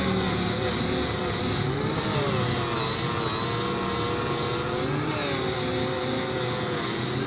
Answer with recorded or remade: recorded